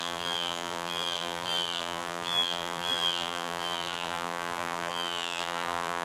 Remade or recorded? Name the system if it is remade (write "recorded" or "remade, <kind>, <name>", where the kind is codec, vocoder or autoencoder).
remade, vocoder, BigVGAN v2